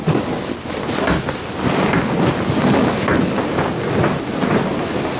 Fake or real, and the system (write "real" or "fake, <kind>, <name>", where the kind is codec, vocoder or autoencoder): real